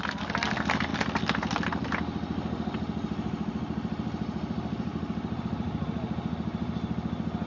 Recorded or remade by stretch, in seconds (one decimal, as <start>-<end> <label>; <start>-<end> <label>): 0.0-7.5 recorded